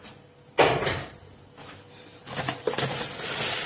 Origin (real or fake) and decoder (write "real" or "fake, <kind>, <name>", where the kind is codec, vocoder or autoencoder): real